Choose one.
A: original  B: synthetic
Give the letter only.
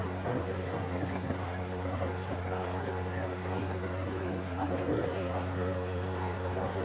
B